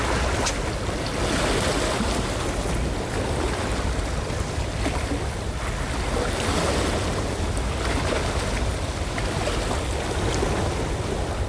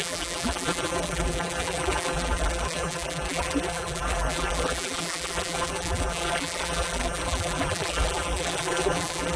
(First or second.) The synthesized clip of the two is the second